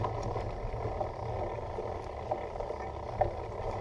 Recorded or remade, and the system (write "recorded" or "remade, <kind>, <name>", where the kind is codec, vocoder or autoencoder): recorded